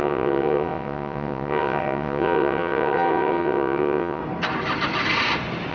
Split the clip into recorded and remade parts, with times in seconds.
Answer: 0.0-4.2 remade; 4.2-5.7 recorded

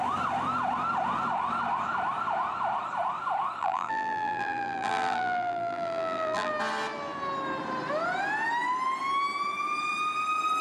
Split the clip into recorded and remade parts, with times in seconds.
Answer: 0.0-3.6 recorded; 3.6-6.5 remade; 6.5-10.6 recorded